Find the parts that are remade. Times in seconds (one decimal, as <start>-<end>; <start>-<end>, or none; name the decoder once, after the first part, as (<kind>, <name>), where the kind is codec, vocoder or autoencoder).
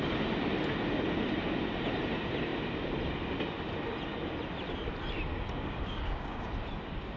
5.3-6.5 (codec, DAC)